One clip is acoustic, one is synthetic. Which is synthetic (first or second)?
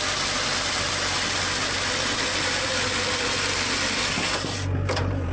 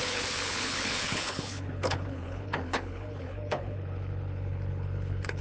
second